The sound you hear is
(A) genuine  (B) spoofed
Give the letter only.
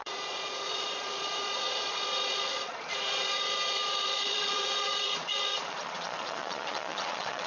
B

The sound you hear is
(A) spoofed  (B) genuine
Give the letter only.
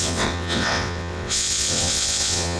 A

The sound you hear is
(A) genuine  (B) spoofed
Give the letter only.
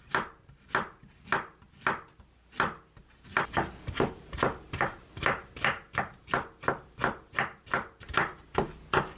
A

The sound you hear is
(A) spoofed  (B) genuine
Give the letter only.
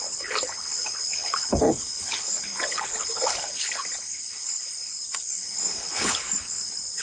A